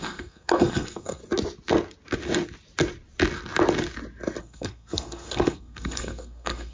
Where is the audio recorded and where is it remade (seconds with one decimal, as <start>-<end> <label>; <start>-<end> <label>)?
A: 0.0-1.2 remade; 1.2-4.4 recorded; 4.4-6.7 remade

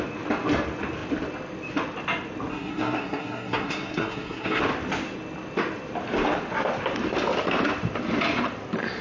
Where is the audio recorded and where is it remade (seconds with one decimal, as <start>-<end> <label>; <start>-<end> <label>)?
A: 0.0-2.5 recorded; 2.5-4.6 remade; 4.6-9.0 recorded

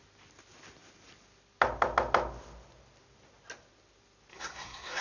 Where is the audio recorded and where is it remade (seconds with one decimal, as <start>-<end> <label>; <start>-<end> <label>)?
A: 0.0-4.3 recorded; 4.3-5.0 remade

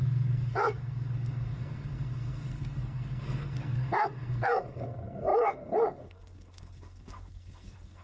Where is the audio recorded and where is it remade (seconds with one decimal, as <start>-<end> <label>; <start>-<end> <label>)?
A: 0.0-8.0 remade

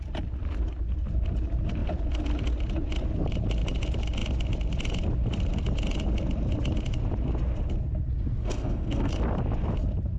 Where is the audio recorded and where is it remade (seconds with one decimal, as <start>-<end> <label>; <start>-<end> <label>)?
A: 0.0-8.4 recorded; 8.4-9.1 remade; 9.1-10.2 recorded

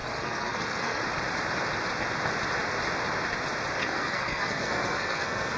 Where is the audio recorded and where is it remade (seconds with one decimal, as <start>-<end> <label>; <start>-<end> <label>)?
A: 0.0-1.0 remade; 1.0-3.8 recorded; 3.8-5.6 remade